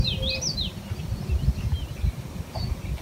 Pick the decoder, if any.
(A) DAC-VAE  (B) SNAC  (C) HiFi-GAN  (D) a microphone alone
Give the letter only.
D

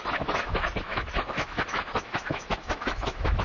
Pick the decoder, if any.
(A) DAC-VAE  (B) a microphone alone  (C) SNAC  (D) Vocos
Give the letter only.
A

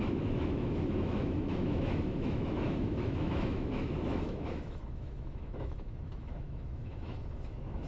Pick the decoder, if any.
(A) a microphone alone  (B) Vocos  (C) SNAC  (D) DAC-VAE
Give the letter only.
D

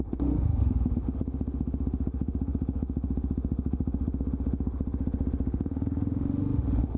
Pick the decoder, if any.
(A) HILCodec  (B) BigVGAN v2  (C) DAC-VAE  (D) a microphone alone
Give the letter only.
C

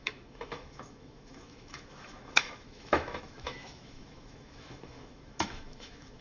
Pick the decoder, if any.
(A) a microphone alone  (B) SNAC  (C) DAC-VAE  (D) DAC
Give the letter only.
C